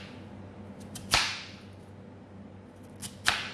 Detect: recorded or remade recorded